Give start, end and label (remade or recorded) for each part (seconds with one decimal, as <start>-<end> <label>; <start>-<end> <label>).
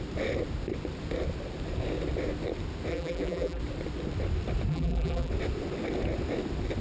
0.0-2.9 recorded; 2.9-3.6 remade; 3.6-4.7 recorded; 4.7-5.3 remade; 5.3-6.8 recorded